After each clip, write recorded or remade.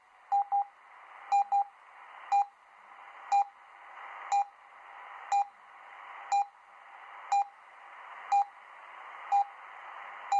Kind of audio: recorded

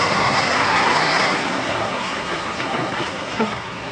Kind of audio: remade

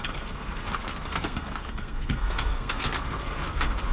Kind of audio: remade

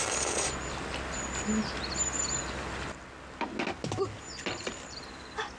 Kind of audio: recorded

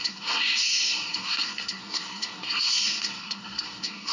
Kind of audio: remade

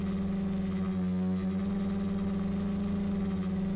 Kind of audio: recorded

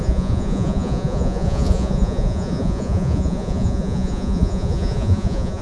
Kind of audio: remade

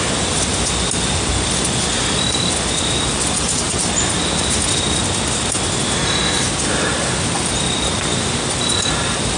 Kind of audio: recorded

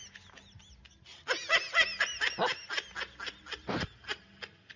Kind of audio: recorded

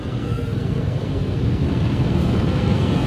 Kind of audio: remade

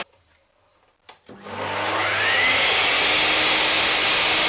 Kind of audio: recorded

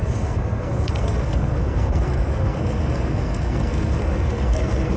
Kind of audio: remade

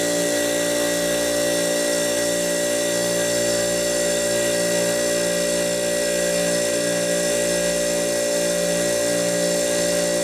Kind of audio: recorded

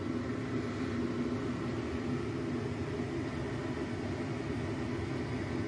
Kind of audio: recorded